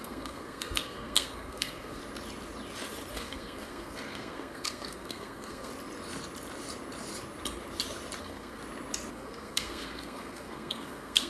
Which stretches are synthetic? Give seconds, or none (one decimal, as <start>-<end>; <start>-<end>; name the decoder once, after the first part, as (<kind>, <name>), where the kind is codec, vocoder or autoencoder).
0.0-2.0 (codec, SNAC); 3.1-5.7; 8.2-8.6; 9.1-11.3